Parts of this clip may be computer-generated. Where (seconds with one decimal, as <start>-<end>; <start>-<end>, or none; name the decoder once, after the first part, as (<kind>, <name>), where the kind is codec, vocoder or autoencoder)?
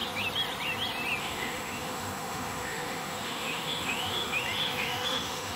1.2-5.6 (autoencoder, DAC-VAE)